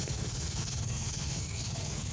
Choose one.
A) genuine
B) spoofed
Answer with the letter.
B